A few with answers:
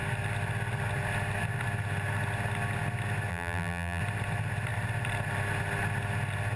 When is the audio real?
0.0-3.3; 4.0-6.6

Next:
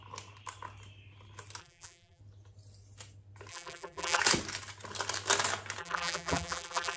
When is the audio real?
0.0-1.6; 2.2-3.5; 4.2-5.8

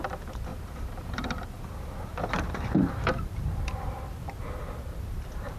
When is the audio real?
0.0-0.5; 3.9-5.6